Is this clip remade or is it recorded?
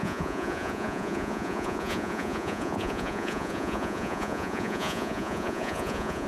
remade